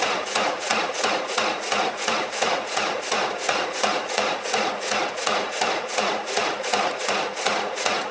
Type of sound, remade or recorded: remade